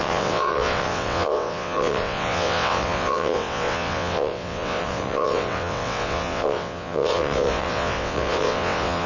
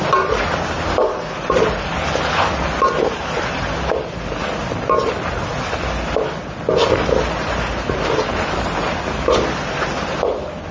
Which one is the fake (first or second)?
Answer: first